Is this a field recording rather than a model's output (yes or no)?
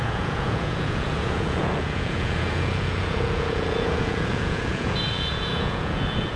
no